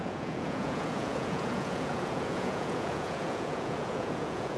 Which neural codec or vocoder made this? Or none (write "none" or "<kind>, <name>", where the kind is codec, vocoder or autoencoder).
vocoder, Vocos